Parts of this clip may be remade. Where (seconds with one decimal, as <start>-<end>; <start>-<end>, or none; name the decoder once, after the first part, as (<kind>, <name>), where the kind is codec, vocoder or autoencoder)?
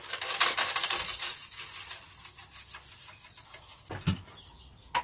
none